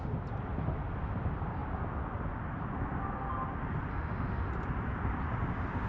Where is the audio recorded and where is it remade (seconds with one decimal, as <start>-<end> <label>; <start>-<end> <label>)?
0.0-3.9 recorded; 3.9-4.5 remade; 4.5-5.9 recorded